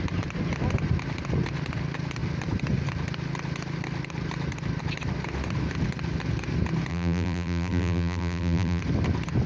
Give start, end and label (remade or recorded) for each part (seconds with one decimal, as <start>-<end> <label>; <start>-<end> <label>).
0.0-6.9 recorded; 6.9-8.8 remade; 8.8-9.5 recorded

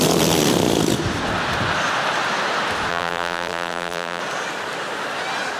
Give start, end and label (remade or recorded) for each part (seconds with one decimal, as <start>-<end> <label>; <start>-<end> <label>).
0.0-2.9 recorded; 2.9-4.2 remade; 4.2-5.6 recorded

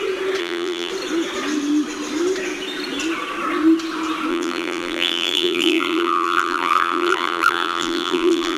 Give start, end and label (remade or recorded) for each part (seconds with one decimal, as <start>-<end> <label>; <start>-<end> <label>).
0.0-0.4 recorded; 0.4-0.9 remade; 0.9-4.3 recorded; 4.3-8.6 remade